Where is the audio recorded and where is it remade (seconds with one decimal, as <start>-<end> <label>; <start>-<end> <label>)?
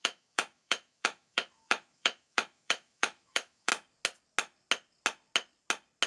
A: 0.0-3.7 remade; 3.7-6.1 recorded